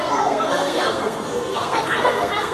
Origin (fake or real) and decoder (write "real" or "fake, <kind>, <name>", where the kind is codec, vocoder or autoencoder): fake, codec, SNAC